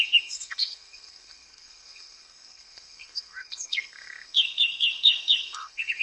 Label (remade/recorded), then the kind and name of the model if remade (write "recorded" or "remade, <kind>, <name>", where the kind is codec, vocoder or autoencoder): remade, codec, SNAC